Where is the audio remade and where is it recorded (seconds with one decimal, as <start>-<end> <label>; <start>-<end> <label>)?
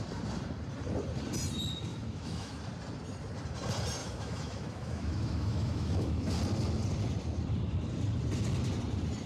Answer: 0.0-1.9 recorded; 1.9-2.6 remade; 2.6-4.0 recorded; 4.0-6.3 remade; 6.3-9.3 recorded